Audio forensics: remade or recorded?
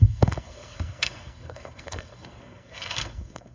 remade